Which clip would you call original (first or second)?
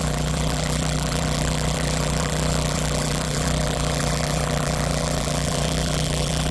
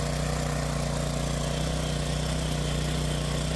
second